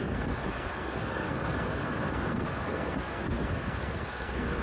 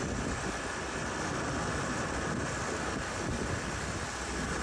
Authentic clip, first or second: second